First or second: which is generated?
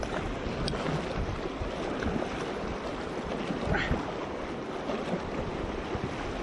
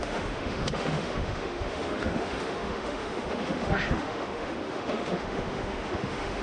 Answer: second